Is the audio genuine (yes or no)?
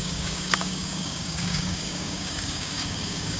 no